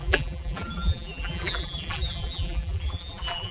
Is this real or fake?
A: fake